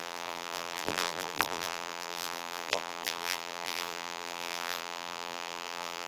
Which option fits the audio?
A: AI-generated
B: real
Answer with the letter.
A